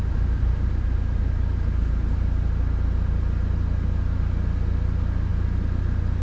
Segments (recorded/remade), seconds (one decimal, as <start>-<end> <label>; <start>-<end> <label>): 0.0-6.2 recorded